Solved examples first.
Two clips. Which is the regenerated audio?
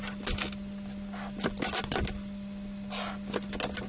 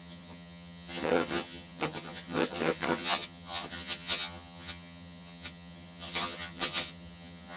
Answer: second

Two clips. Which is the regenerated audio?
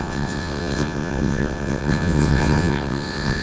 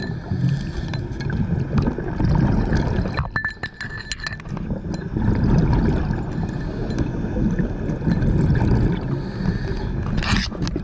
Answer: first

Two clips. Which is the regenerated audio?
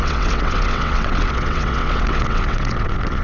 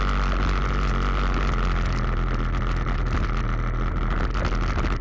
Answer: first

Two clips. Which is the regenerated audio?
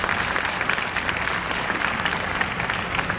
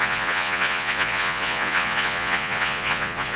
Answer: second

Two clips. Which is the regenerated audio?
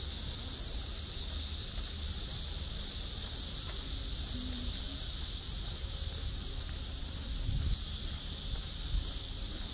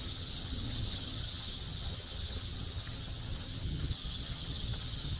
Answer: second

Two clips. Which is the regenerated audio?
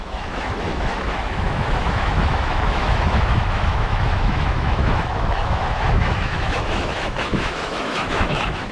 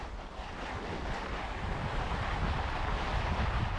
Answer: first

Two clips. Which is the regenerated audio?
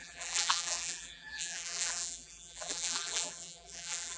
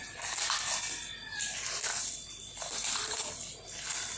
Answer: first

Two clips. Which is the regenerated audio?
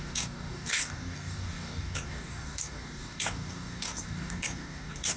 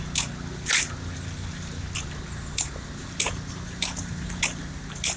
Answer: first